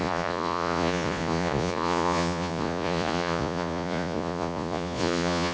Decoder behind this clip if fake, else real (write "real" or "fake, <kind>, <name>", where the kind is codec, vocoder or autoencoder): fake, vocoder, Vocos